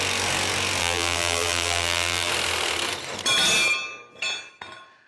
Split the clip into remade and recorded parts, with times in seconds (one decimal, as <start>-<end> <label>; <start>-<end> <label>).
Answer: 0.0-0.8 recorded; 0.8-2.3 remade; 2.3-5.1 recorded